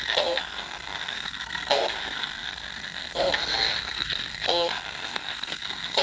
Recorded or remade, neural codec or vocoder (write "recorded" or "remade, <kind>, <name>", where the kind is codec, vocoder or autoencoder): remade, codec, SNAC